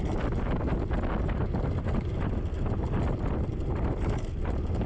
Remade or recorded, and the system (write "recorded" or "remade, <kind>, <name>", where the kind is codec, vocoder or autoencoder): recorded